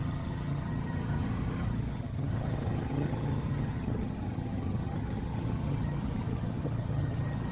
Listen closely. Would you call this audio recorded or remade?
remade